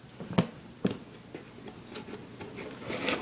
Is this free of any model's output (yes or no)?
yes